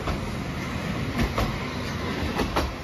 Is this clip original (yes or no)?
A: yes